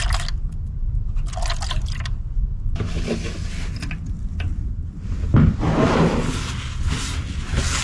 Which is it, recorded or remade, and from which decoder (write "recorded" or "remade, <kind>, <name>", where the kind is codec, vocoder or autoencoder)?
recorded